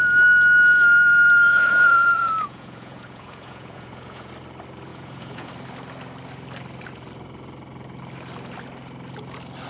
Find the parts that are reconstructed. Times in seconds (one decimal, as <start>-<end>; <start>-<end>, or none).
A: 1.5-4.3; 4.9-5.5